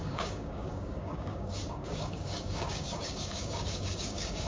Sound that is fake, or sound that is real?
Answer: fake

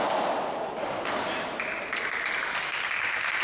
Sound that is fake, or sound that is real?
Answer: real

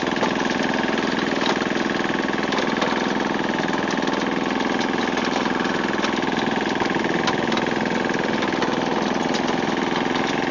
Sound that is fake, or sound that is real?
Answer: real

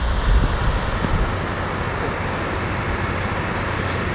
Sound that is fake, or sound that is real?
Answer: real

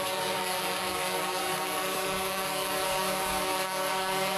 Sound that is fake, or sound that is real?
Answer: fake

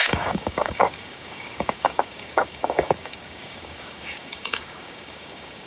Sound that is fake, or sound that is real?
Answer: fake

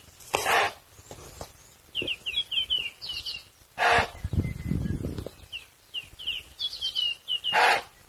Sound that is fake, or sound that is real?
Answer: real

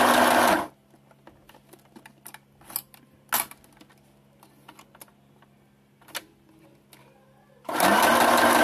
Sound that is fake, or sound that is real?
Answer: real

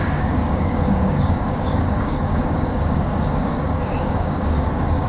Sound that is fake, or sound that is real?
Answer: fake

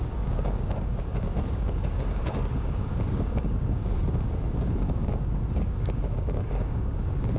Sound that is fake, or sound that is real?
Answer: fake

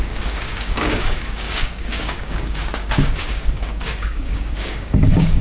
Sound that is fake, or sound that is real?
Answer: fake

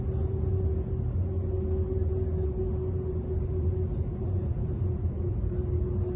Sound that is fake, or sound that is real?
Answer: real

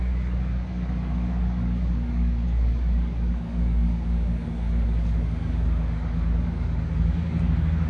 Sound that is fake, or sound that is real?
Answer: fake